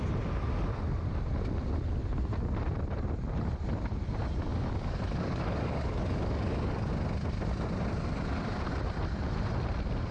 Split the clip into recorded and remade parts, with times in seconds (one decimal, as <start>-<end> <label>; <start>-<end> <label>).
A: 0.0-4.5 recorded; 4.5-6.9 remade; 6.9-10.1 recorded